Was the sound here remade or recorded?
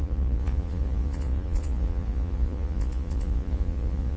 remade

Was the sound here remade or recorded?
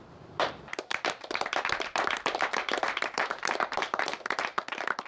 remade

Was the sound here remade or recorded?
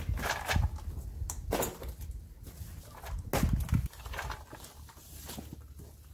recorded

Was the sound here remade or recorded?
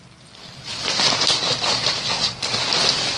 recorded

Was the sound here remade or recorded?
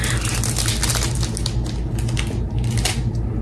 recorded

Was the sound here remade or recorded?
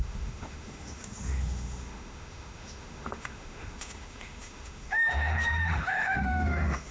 remade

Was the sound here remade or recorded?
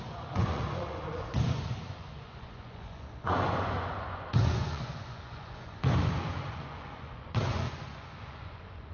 remade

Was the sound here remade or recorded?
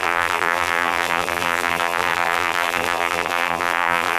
remade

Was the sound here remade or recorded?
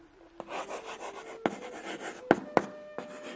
recorded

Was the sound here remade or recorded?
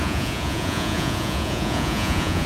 remade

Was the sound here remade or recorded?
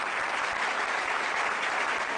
recorded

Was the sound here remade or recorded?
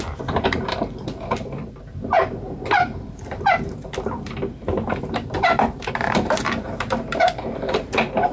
remade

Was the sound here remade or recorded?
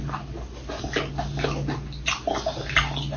recorded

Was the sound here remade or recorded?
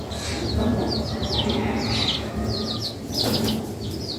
recorded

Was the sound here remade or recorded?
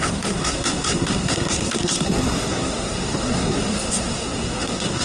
remade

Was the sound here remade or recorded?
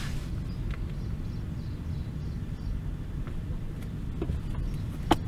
recorded